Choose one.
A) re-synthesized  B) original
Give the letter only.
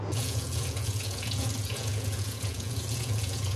A